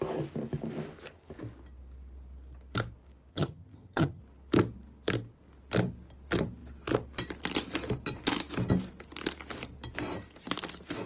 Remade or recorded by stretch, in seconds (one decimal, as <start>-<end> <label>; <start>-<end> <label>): 0.0-3.3 recorded; 3.3-4.2 remade; 4.2-11.1 recorded